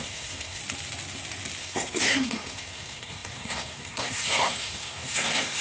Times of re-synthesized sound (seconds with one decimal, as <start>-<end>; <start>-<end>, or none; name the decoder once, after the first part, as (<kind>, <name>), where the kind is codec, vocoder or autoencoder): 0.0-0.6 (codec, SNAC); 1.6-5.6